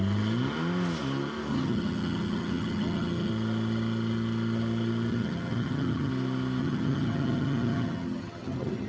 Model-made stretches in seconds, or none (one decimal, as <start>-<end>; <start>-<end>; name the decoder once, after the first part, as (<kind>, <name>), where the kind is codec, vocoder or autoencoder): 1.5-3.3 (vocoder, HiFi-GAN); 5.1-6.1; 6.6-8.9